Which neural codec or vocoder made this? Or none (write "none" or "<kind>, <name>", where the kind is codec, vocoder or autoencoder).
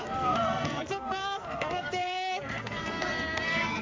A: codec, SNAC